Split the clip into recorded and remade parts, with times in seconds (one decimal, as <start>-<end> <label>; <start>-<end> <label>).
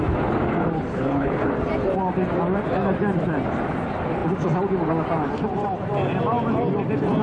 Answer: 0.0-0.9 recorded; 0.9-1.5 remade; 1.5-7.2 recorded